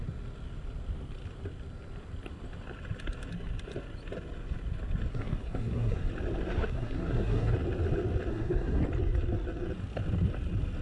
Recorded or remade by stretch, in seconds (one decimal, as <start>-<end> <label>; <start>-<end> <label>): 0.0-5.1 recorded; 5.1-6.1 remade; 6.1-6.6 recorded; 6.6-7.5 remade; 7.5-8.3 recorded; 8.3-8.8 remade; 8.8-10.8 recorded